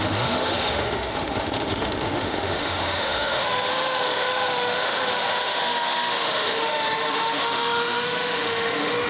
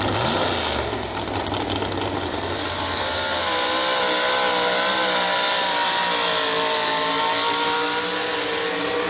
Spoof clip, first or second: first